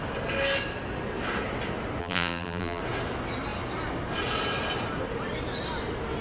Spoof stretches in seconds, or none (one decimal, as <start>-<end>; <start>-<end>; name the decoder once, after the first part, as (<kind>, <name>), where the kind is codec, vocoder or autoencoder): 2.0-2.8 (vocoder, BigVGAN v2)